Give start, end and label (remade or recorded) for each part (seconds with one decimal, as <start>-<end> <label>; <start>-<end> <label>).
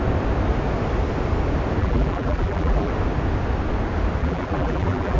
0.0-1.8 recorded; 1.8-2.9 remade; 2.9-4.2 recorded; 4.2-5.2 remade